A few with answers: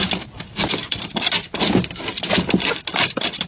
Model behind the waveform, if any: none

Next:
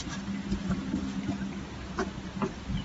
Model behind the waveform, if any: none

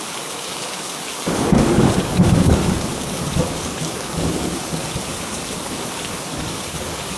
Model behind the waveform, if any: codec, DAC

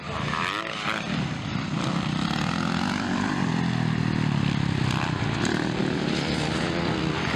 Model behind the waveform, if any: none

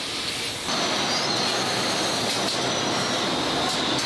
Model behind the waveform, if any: none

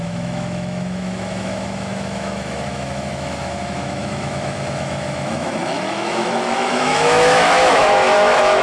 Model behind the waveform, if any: autoencoder, DAC-VAE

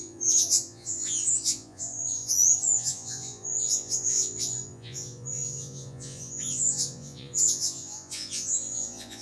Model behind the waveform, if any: vocoder, Vocos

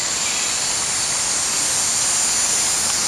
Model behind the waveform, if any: none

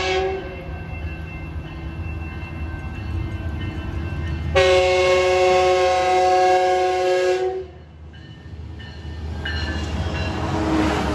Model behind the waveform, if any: none